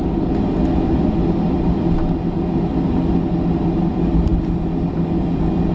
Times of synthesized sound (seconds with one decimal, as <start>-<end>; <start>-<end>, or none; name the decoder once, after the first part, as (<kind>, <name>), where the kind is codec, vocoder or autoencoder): none

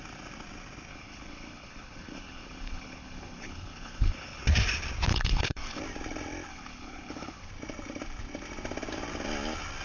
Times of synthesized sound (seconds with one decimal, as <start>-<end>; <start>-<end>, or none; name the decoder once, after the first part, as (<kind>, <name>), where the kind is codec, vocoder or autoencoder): 0.9-4.4 (codec, HILCodec); 5.1-5.8; 6.5-7.5

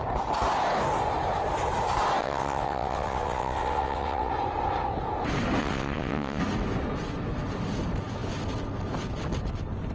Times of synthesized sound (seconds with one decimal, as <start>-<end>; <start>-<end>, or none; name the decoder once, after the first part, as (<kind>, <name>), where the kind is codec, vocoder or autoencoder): 2.2-4.3 (vocoder, WaveNeXt); 5.6-6.4

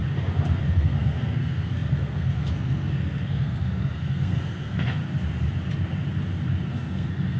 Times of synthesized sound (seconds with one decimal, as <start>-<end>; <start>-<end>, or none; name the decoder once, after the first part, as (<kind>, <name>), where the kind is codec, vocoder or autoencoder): 0.6-5.0 (codec, SNAC); 6.7-7.4

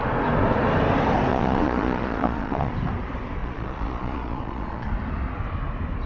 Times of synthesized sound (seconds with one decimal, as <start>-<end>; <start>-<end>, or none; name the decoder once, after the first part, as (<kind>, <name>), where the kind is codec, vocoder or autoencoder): 1.3-2.7 (vocoder, Vocos); 3.4-4.9

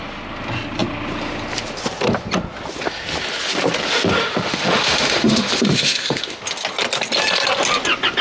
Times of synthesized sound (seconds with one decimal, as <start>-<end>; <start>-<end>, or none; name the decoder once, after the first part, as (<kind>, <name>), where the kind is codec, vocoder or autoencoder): 4.2-6.4 (autoencoder, DAC-VAE)